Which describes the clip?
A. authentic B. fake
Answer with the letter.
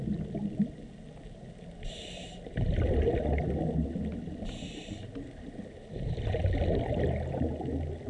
A